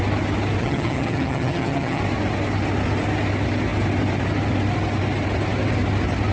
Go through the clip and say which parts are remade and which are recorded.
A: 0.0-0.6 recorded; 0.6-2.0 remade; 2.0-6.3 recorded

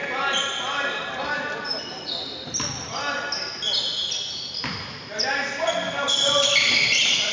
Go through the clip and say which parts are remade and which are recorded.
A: 0.0-7.3 recorded

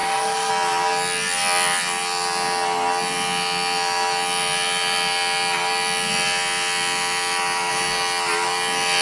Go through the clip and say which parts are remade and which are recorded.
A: 0.0-0.5 remade; 0.5-9.0 recorded

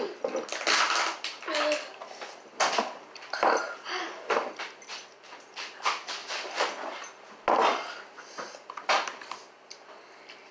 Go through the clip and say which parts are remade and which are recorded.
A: 0.0-10.5 recorded

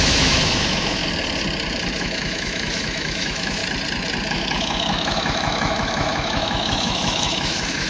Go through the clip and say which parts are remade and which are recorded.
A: 0.0-1.0 remade; 1.0-2.0 recorded; 2.0-3.6 remade; 3.6-4.3 recorded; 4.3-7.9 remade